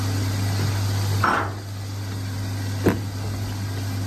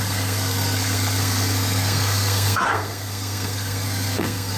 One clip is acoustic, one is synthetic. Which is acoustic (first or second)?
first